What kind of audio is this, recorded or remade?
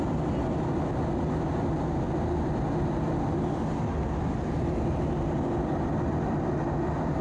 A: recorded